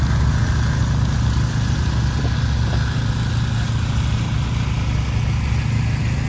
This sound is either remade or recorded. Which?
recorded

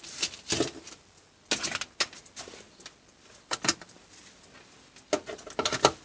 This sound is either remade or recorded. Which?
recorded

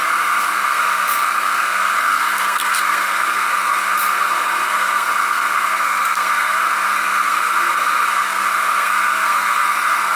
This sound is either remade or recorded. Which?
remade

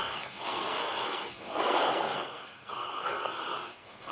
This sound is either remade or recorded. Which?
remade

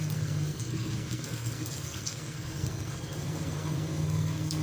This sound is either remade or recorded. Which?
remade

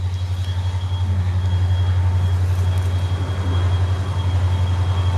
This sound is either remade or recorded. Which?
recorded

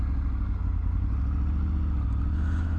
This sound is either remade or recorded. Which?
recorded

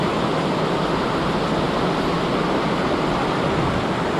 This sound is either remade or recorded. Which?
recorded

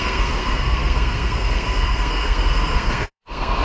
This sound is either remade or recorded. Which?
remade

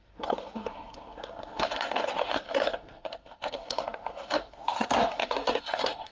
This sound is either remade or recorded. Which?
remade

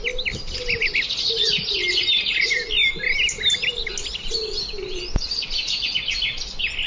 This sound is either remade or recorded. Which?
recorded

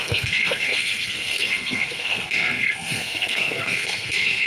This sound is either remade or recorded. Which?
remade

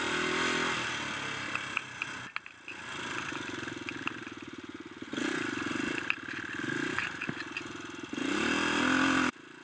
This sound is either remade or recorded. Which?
recorded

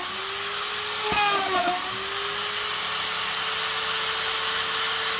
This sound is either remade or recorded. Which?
recorded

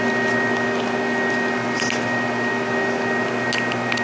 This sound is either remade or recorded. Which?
recorded